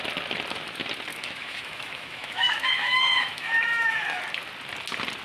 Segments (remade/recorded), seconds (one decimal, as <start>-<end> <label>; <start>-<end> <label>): 0.0-1.1 recorded; 1.1-4.2 remade; 4.2-5.2 recorded